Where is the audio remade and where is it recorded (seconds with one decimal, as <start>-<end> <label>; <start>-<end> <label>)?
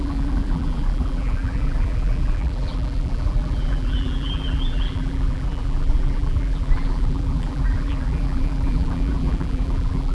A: 0.0-10.1 remade